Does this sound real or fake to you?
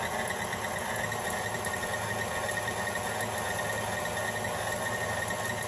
real